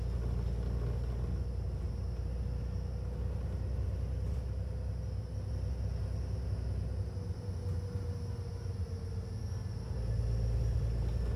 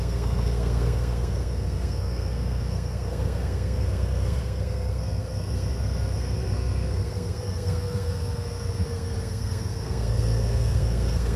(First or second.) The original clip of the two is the first